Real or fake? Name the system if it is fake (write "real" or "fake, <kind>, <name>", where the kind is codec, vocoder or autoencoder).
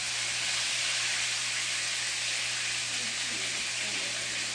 real